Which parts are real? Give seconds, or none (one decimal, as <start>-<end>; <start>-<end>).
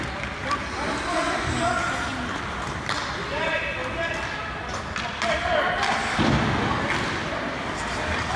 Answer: 0.0-8.4